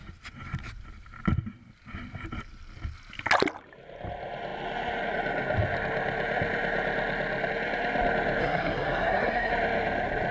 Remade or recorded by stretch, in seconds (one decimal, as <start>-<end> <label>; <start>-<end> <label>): 0.0-8.4 recorded; 8.4-9.5 remade; 9.5-10.3 recorded